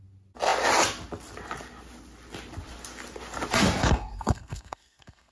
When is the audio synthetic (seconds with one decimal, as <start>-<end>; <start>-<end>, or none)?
3.8-5.3